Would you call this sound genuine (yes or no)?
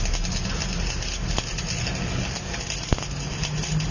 yes